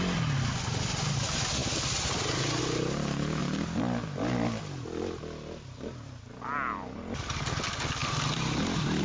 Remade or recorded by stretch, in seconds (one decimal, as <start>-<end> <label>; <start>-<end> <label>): 0.0-9.0 recorded